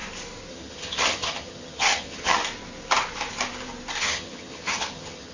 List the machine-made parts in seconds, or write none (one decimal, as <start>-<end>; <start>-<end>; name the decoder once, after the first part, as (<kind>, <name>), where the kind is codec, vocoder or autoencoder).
0.5-2.4 (vocoder, HiFi-GAN); 4.0-5.3